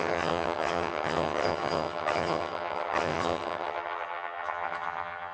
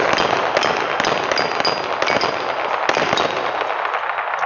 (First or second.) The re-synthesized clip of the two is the first